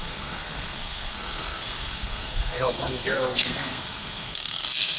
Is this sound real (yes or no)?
no